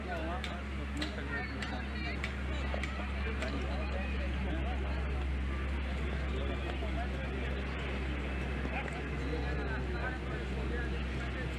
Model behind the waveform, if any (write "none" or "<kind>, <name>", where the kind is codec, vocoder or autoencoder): none